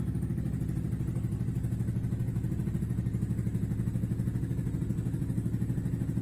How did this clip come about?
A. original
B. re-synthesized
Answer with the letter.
A